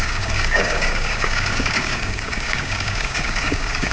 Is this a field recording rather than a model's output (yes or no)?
no